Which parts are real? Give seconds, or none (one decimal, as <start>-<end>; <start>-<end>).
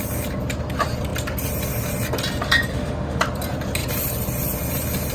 0.0-2.7; 3.2-5.1